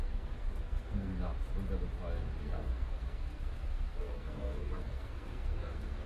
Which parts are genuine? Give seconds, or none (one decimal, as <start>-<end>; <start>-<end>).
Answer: 1.1-2.4